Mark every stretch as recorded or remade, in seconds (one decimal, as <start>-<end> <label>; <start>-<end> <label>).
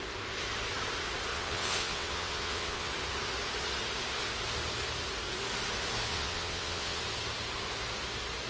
0.0-1.3 recorded; 1.3-2.9 remade; 2.9-6.1 recorded; 6.1-7.0 remade; 7.0-8.5 recorded